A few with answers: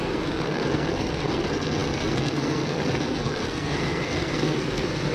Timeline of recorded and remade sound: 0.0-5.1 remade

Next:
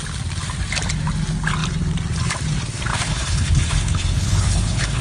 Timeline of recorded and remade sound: 0.0-2.9 recorded; 2.9-5.0 remade

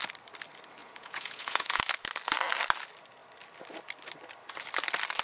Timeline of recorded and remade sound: 0.0-0.8 recorded; 0.8-1.8 remade; 1.8-5.2 recorded

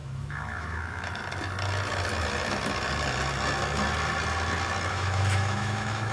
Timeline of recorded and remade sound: 0.0-1.2 remade; 1.2-4.9 recorded; 4.9-6.1 remade

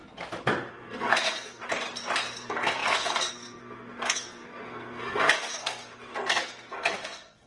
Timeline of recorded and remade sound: 0.0-0.7 recorded; 0.7-1.6 remade; 1.6-2.4 recorded; 2.4-7.5 remade

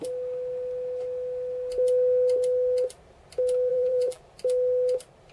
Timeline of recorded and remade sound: 0.0-3.7 recorded; 3.7-4.2 remade; 4.2-5.3 recorded